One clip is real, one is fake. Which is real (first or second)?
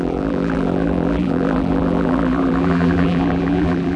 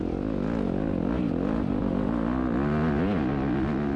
second